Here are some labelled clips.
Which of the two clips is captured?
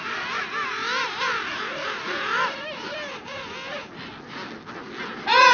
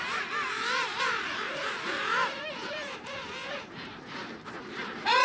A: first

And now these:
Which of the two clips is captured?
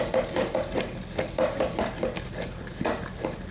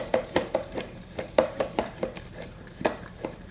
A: first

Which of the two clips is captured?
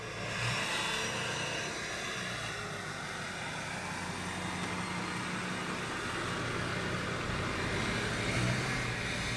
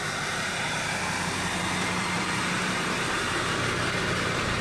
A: first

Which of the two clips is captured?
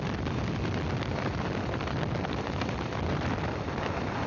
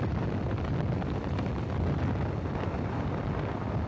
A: second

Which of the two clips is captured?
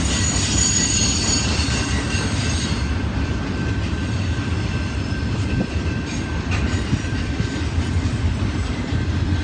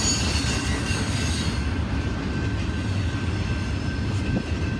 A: second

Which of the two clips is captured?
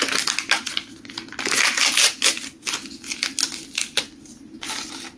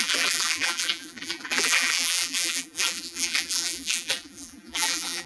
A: first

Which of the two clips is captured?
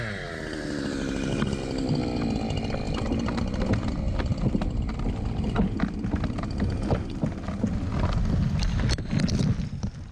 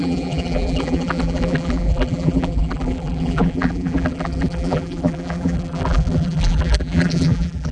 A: first